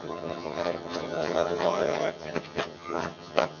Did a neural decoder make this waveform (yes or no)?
yes